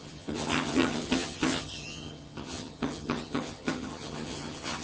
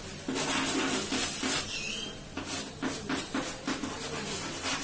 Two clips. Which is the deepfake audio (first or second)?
first